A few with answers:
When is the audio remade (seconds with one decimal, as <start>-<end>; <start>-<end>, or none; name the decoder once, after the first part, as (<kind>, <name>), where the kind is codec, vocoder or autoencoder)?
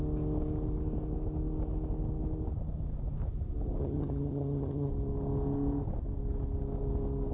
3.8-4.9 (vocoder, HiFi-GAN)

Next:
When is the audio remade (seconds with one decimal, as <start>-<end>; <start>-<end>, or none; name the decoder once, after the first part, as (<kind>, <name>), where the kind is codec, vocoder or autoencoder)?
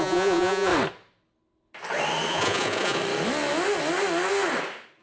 0.0-0.7 (vocoder, Vocos); 2.3-3.0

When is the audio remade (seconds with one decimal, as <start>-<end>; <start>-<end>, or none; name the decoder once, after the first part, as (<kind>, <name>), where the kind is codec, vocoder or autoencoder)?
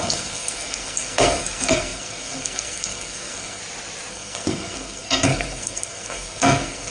0.0-3.6 (codec, SNAC); 4.1-6.9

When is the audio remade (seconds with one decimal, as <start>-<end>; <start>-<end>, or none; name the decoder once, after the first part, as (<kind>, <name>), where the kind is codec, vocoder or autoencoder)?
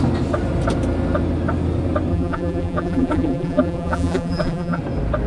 2.1-4.8 (vocoder, BigVGAN v2)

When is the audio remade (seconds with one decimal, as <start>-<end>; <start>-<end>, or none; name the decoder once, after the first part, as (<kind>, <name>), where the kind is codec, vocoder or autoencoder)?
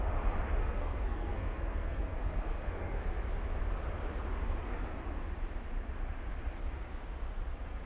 0.6-3.0 (codec, SNAC)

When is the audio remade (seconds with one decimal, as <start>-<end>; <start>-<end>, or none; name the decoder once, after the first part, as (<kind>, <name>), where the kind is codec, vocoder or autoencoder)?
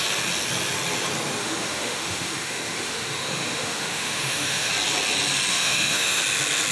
1.4-4.7 (autoencoder, DAC-VAE); 5.5-6.2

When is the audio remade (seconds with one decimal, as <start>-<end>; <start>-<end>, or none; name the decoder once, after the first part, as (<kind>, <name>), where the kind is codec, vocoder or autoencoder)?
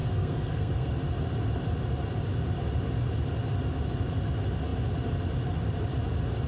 0.0-0.9 (codec, SNAC)